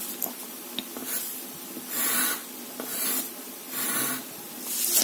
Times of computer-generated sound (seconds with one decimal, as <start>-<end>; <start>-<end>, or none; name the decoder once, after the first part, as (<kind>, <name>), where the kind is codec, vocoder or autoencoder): none